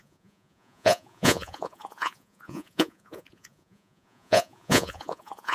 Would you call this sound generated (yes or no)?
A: yes